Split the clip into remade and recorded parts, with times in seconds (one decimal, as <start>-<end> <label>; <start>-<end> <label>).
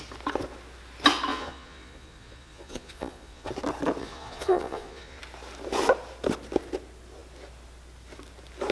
0.0-1.3 recorded; 1.3-3.5 remade; 3.5-4.0 recorded; 4.0-5.2 remade; 5.2-8.7 recorded